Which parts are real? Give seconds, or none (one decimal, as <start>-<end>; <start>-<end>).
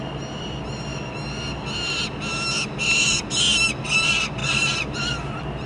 0.0-5.7